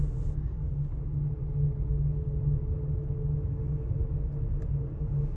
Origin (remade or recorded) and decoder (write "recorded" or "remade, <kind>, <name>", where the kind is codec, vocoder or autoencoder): recorded